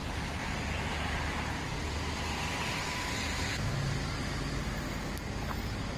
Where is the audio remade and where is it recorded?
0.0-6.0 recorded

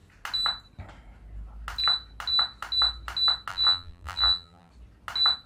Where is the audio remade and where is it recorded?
0.0-3.5 recorded; 3.5-4.7 remade; 4.7-5.5 recorded

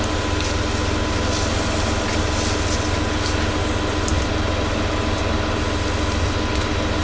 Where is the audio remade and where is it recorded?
0.0-7.0 recorded

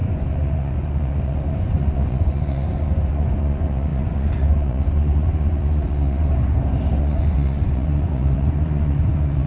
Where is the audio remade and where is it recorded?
0.0-6.3 remade; 6.3-7.0 recorded; 7.0-9.5 remade

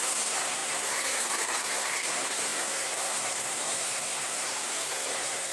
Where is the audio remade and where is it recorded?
0.0-5.5 remade